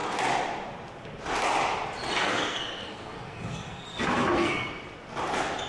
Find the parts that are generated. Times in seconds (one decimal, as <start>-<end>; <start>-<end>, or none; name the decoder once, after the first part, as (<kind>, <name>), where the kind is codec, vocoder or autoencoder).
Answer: 2.2-4.7 (codec, SNAC)